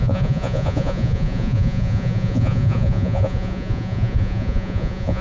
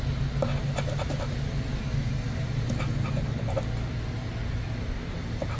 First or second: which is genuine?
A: second